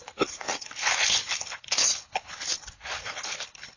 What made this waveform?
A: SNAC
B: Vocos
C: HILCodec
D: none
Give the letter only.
C